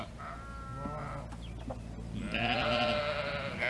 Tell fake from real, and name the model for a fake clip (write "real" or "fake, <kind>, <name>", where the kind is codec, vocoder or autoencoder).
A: real